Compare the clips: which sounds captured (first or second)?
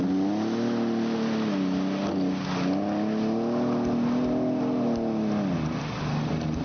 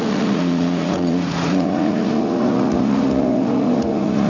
first